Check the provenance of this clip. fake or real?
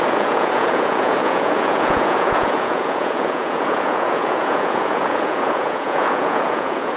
fake